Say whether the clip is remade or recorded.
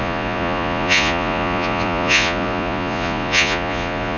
remade